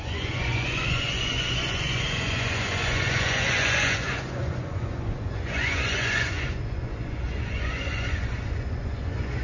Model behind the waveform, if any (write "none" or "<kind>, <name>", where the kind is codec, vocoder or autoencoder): vocoder, Vocos